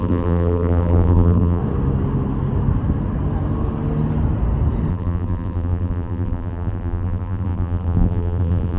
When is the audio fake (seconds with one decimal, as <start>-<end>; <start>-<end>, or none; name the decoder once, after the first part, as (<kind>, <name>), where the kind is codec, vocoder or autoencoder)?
0.0-1.6 (vocoder, BigVGAN v2); 4.9-8.8